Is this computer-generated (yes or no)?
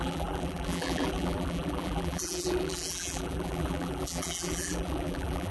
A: yes